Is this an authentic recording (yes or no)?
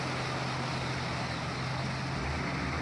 yes